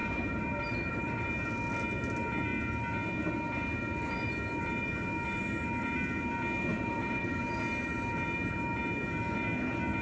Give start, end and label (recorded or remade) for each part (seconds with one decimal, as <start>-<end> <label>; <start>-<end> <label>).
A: 0.0-1.3 remade; 1.3-6.7 recorded; 6.7-7.4 remade; 7.4-10.0 recorded